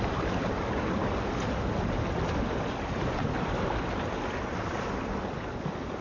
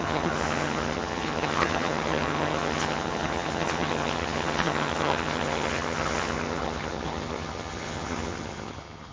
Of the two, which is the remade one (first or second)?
second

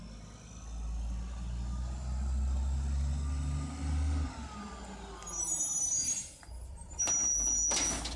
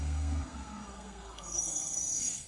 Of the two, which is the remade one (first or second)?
second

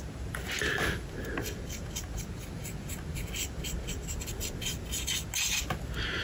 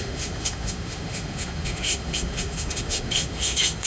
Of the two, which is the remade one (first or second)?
second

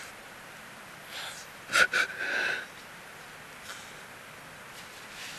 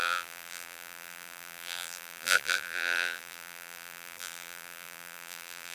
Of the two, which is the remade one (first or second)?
second